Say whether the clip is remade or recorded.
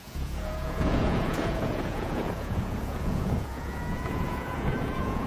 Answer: remade